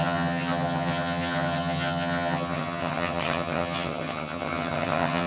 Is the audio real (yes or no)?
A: no